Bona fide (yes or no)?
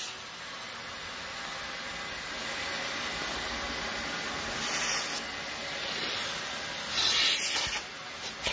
yes